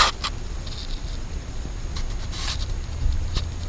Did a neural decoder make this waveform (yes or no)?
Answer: no